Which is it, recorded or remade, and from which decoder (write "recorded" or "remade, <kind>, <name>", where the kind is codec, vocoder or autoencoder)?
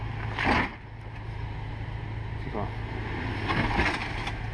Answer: recorded